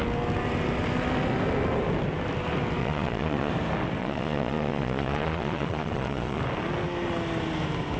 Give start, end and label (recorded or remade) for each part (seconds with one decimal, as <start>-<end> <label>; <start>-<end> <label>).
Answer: 0.0-2.8 recorded; 2.8-3.5 remade; 3.5-4.0 recorded; 4.0-6.4 remade; 6.4-8.0 recorded